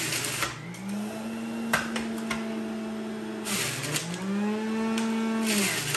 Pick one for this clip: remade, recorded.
recorded